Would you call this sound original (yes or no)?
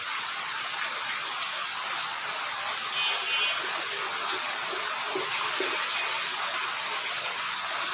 yes